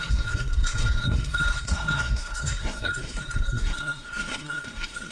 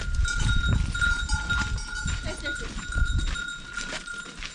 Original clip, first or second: second